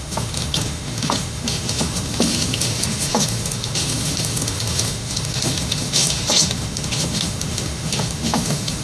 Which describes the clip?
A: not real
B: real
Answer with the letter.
A